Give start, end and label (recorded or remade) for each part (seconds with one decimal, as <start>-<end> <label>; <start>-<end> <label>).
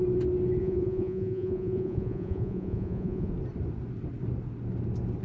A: 0.0-0.6 recorded; 0.6-3.3 remade; 3.3-5.2 recorded